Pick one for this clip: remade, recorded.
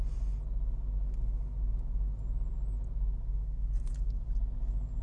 recorded